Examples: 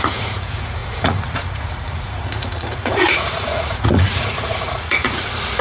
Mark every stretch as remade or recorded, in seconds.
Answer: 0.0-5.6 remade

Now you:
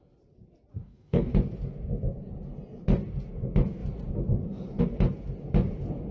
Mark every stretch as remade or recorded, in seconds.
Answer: 0.0-0.8 recorded; 0.8-1.3 remade; 1.3-6.1 recorded

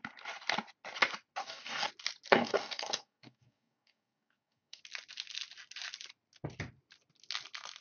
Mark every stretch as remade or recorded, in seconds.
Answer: 0.0-1.4 recorded; 1.4-1.9 remade; 1.9-2.3 recorded; 2.3-4.8 remade; 4.8-7.8 recorded

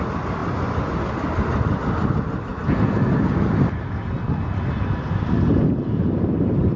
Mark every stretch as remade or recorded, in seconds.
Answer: 0.0-6.8 recorded

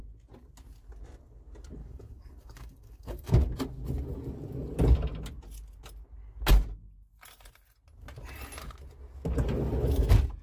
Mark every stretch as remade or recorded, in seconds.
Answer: 0.0-1.8 recorded; 1.8-3.3 remade; 3.3-10.4 recorded